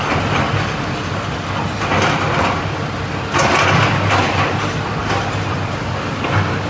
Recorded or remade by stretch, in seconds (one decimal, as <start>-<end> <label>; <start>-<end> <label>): 0.0-5.0 recorded; 5.0-5.9 remade; 5.9-6.7 recorded